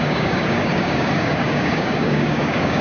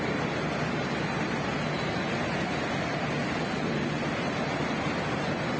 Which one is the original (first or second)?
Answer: second